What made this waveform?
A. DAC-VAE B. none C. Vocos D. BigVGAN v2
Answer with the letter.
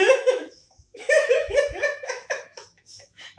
A